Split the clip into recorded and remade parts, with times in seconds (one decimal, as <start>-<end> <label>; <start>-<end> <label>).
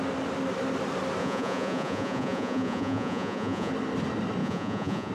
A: 0.0-1.2 recorded; 1.2-3.7 remade; 3.7-4.4 recorded; 4.4-5.1 remade